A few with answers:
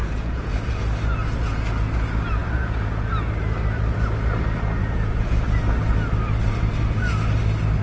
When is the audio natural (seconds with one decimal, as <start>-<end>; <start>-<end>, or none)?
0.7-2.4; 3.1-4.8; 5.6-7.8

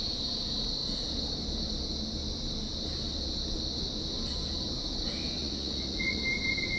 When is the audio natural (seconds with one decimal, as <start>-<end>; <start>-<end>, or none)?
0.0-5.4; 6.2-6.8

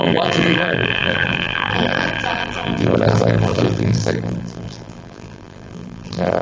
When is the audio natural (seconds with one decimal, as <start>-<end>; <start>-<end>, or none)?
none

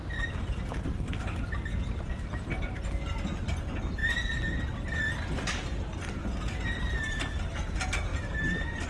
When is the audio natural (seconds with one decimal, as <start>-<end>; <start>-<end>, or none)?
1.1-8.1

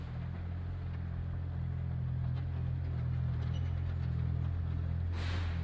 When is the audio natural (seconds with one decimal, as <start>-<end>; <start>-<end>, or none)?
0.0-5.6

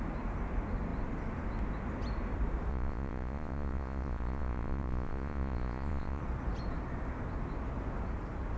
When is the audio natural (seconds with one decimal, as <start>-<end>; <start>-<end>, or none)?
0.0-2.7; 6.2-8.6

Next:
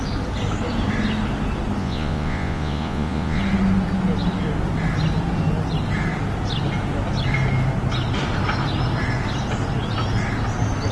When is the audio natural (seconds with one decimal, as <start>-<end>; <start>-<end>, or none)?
0.0-1.8; 3.4-10.9